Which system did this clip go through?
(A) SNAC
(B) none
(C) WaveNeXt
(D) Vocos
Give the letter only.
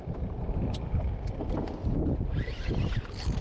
B